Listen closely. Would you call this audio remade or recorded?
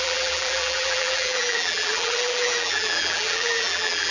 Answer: remade